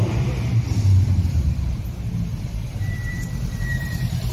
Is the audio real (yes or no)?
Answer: no